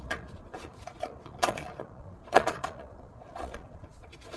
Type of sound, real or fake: fake